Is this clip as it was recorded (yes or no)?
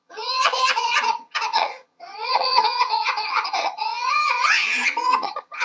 no